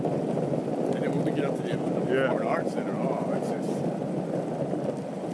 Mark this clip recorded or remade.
recorded